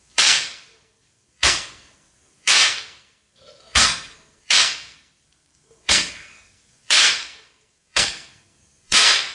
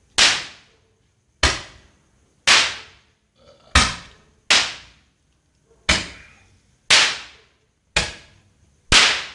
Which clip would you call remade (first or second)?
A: first